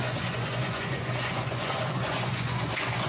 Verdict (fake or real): fake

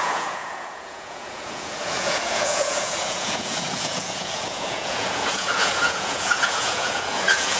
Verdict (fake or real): fake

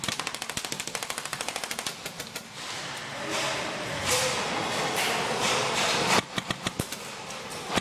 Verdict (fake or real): real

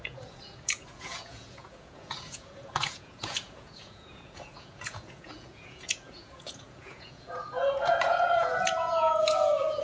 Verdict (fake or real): fake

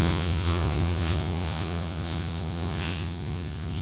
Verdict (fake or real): fake